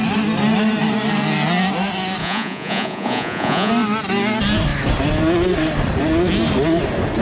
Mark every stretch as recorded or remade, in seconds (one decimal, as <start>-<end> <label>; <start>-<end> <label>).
0.0-2.2 recorded; 2.2-3.7 remade; 3.7-7.2 recorded